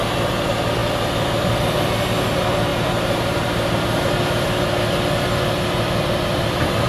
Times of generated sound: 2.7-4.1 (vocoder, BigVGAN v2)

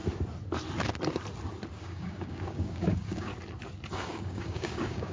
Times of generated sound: 1.7-3.3 (codec, DAC); 3.9-5.1

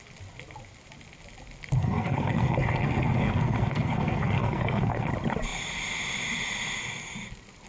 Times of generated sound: 1.8-5.1 (codec, SNAC)

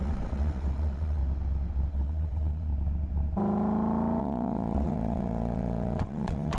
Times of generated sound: 0.0-1.2 (vocoder, WaveNeXt); 1.9-2.7; 4.2-6.6

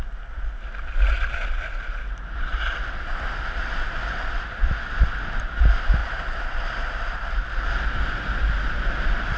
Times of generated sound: none

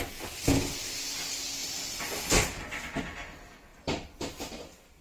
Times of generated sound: 1.6-3.0 (vocoder, BigVGAN v2); 3.7-4.2

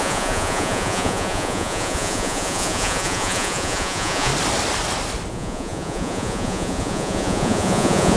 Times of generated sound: 0.0-4.3 (vocoder, Vocos); 5.3-8.2

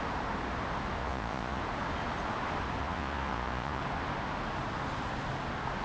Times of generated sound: 1.0-1.6 (vocoder, Vocos); 2.8-3.8